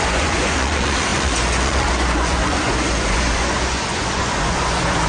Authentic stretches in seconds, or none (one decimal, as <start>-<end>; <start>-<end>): none